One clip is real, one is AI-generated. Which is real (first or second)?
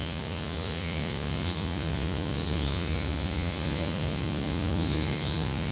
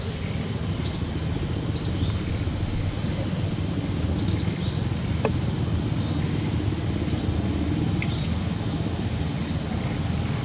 second